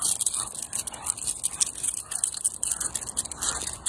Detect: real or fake real